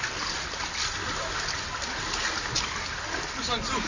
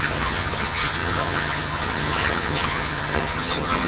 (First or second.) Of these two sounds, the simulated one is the second